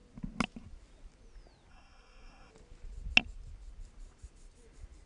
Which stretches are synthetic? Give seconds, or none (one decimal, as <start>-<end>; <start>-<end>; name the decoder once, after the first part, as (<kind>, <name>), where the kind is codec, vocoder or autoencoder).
1.7-2.5 (codec, SNAC)